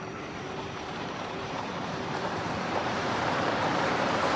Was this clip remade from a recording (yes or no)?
yes